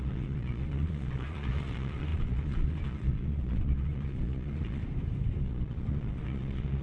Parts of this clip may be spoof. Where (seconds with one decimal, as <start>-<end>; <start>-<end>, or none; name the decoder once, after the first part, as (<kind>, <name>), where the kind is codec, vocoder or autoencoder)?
0.0-4.8 (vocoder, Vocos); 5.4-6.8